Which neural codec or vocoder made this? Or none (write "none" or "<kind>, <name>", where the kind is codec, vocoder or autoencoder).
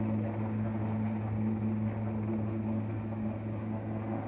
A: none